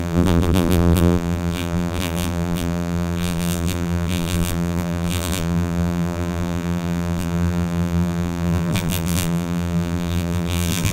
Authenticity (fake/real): fake